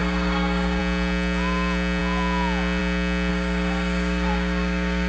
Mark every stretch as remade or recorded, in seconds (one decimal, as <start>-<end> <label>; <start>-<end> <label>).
0.0-0.8 remade; 0.8-3.3 recorded; 3.3-5.1 remade